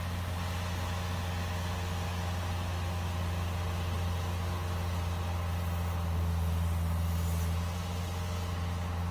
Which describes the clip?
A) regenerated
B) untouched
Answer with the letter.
B